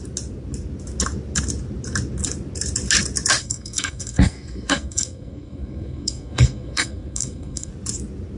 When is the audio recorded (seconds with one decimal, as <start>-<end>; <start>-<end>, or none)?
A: 0.0-3.4; 7.7-8.4